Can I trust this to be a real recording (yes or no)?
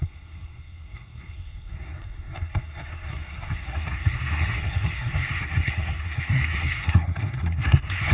no